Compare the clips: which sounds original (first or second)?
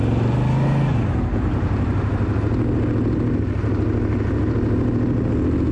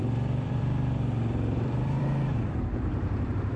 first